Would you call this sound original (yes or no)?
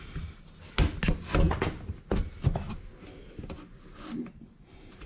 yes